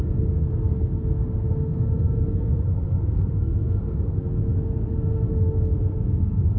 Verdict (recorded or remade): remade